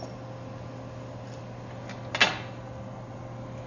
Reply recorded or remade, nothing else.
recorded